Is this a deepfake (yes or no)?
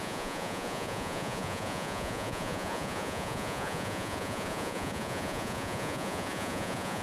yes